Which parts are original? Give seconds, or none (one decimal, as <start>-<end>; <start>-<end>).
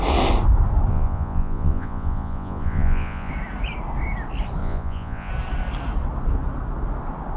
0.0-0.9; 3.3-4.6; 5.3-7.4